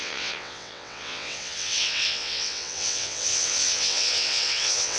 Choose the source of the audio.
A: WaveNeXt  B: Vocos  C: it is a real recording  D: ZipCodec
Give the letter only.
A